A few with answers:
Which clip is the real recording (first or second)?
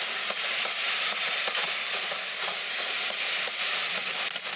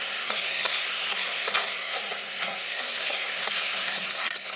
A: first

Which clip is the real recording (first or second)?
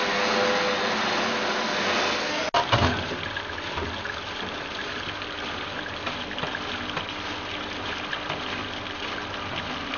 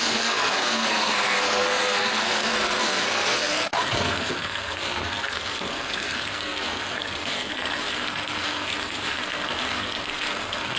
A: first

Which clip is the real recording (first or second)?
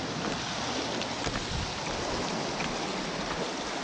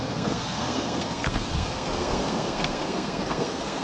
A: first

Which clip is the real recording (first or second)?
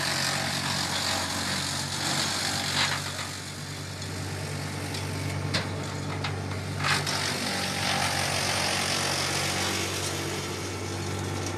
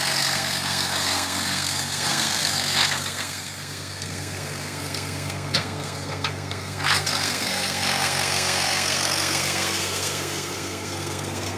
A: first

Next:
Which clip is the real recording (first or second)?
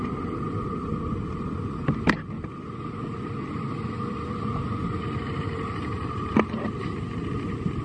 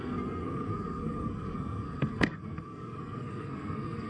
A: first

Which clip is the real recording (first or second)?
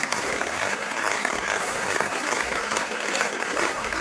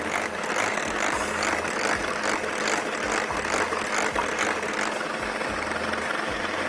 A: second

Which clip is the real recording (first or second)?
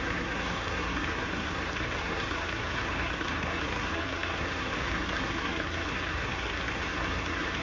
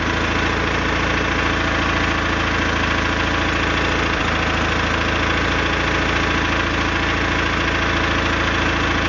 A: second